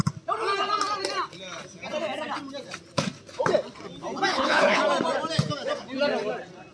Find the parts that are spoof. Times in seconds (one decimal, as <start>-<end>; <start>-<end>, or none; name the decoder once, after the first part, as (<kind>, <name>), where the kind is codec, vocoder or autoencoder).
4.3-4.8 (codec, HILCodec)